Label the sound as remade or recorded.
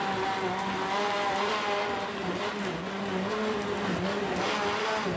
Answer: recorded